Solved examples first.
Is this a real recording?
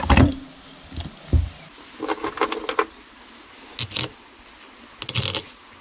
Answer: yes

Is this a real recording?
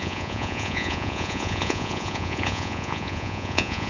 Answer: no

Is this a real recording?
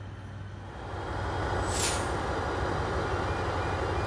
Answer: yes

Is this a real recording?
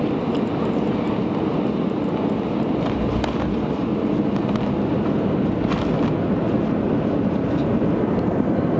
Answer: yes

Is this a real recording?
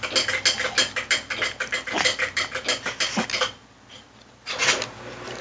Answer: yes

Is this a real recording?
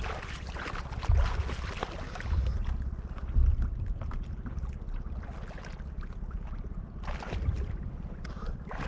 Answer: yes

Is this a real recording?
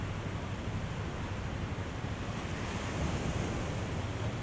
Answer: yes